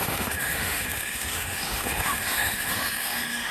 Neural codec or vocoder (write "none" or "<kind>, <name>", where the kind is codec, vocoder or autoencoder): autoencoder, DAC-VAE